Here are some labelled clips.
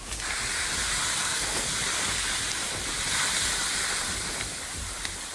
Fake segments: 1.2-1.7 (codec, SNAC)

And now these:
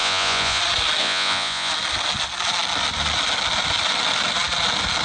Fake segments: 0.0-0.6 (vocoder, Vocos); 1.0-1.7

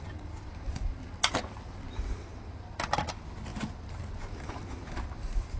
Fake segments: none

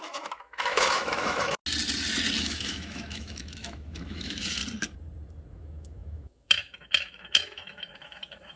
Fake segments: 0.0-1.6 (autoencoder, DAC-VAE); 2.4-4.6; 5.5-8.6